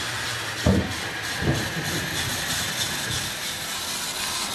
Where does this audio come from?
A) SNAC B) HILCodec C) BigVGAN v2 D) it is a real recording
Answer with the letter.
D